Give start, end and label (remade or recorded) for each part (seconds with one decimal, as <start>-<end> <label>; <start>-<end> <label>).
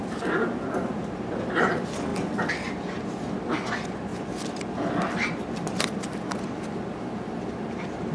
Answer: 0.0-8.1 recorded